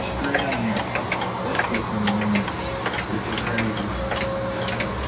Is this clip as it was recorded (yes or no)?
yes